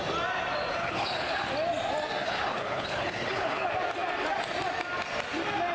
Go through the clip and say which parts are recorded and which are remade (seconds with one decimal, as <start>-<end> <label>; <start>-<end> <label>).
0.0-0.8 recorded; 0.8-1.5 remade; 1.5-2.2 recorded; 2.2-3.7 remade; 3.7-5.7 recorded